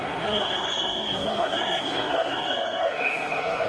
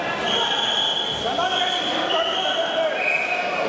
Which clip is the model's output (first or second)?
first